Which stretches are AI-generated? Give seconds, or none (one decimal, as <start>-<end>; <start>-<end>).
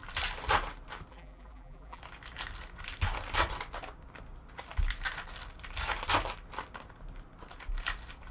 1.1-2.0